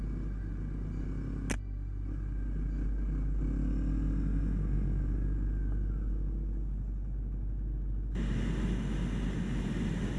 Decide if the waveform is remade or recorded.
recorded